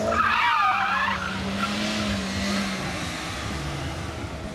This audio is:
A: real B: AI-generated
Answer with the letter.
A